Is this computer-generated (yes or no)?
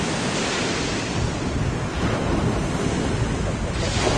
no